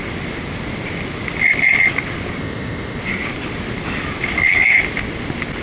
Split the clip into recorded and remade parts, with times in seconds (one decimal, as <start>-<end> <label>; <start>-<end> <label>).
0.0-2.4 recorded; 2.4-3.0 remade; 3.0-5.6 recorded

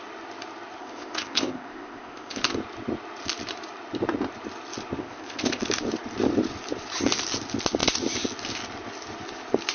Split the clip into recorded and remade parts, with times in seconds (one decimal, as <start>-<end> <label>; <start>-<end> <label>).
0.0-0.8 recorded; 0.8-2.4 remade; 2.4-5.0 recorded; 5.0-5.6 remade; 5.6-9.7 recorded

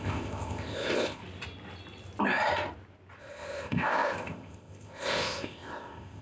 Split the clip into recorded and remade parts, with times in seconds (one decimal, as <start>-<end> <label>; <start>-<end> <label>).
0.0-1.2 remade; 1.2-3.2 recorded; 3.2-6.2 remade

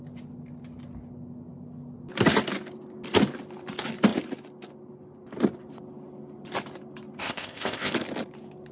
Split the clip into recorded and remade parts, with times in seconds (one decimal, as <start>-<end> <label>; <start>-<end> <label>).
0.0-7.2 recorded; 7.2-7.9 remade; 7.9-8.7 recorded